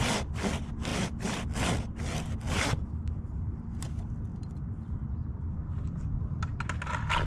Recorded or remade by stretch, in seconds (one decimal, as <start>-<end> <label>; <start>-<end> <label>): 0.0-0.9 recorded; 0.9-1.6 remade; 1.6-4.3 recorded; 4.3-6.2 remade; 6.2-7.3 recorded